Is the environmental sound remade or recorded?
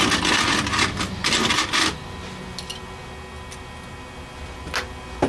recorded